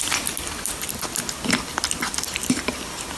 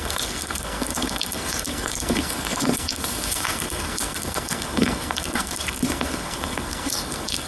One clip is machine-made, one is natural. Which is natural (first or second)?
first